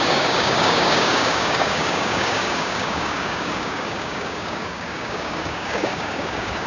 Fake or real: fake